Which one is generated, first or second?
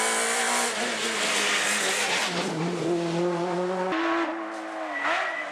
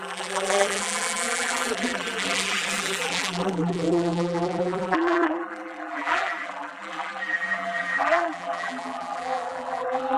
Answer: second